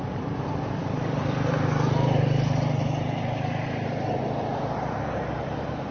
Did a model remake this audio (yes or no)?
yes